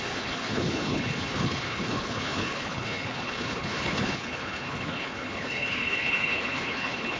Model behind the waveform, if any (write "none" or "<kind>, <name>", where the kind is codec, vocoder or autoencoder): codec, HILCodec